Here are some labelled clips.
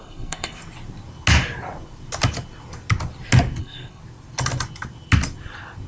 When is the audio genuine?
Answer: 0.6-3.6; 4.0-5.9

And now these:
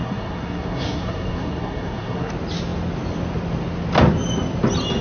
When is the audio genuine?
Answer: 2.3-5.0

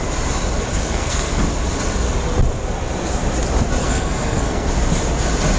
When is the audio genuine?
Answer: 0.0-0.8; 1.4-3.8; 4.7-5.6

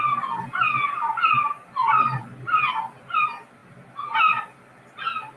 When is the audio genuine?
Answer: 0.0-5.4